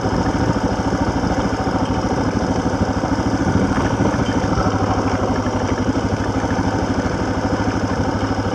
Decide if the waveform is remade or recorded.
recorded